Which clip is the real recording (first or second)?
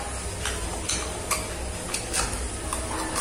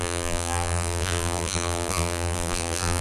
first